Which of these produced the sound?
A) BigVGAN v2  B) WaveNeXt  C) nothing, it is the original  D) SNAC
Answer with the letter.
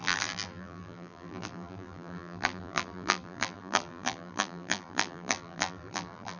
A